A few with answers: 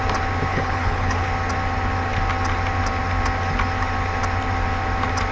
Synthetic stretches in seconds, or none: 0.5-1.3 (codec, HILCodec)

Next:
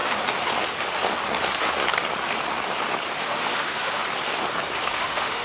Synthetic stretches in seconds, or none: 3.2-4.0 (autoencoder, DAC-VAE); 4.8-5.4

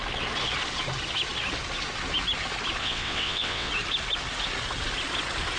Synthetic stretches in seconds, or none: 2.8-3.7 (vocoder, WaveNeXt)

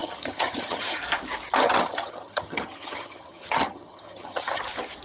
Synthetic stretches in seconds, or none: 0.0-1.0 (vocoder, HiFi-GAN); 1.6-4.6

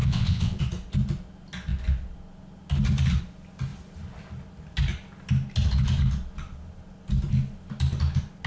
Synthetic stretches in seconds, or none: 0.0-0.6 (vocoder, WaveNeXt)

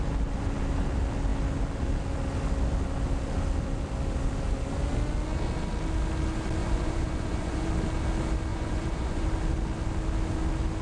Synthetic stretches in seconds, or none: 6.6-7.7 (vocoder, Vocos); 8.5-9.3

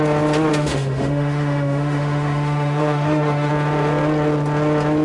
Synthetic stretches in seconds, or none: 0.5-3.5 (autoencoder, DAC-VAE)